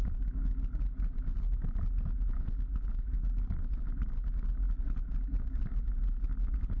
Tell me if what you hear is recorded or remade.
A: recorded